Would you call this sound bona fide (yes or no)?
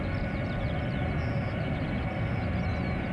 yes